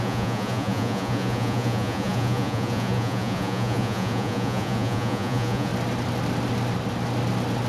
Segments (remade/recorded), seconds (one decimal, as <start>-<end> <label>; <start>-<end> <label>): 0.0-5.7 remade; 5.7-7.7 recorded